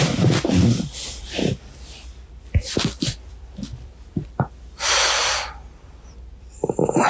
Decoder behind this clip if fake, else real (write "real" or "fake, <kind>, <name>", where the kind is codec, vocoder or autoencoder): fake, vocoder, BigVGAN v2